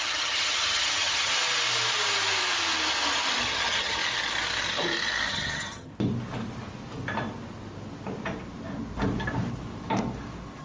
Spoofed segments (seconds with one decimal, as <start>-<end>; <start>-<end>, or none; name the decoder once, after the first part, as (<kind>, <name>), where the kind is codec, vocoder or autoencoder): 0.0-1.3 (vocoder, HiFi-GAN); 3.4-4.0; 5.3-5.9